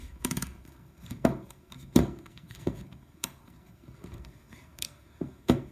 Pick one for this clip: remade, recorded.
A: remade